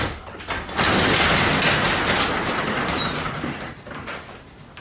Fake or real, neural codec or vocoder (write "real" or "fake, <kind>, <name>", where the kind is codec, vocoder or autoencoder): real